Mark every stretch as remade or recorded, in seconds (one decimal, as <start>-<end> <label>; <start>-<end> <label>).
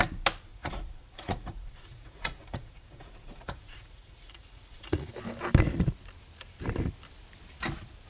0.0-0.5 recorded; 0.5-5.1 remade; 5.1-8.1 recorded